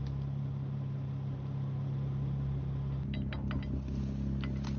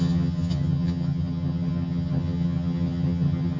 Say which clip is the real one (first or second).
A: first